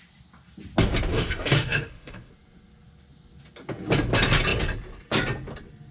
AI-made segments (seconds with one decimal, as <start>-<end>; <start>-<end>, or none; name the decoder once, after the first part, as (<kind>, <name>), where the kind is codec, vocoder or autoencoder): 1.1-2.3 (autoencoder, DAC-VAE)